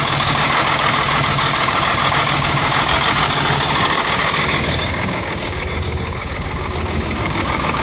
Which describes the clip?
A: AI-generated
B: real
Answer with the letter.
A